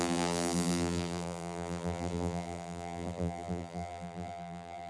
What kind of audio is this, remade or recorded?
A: remade